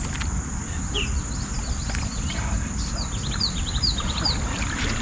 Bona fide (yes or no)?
yes